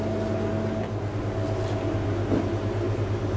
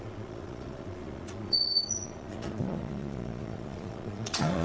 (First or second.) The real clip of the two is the first